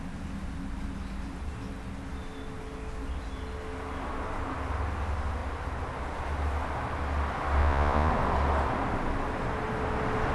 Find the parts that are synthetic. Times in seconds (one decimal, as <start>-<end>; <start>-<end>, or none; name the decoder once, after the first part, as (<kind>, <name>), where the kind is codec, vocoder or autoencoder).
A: 7.6-8.1 (vocoder, Vocos)